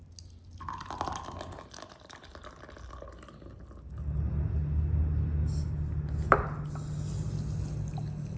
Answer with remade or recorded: recorded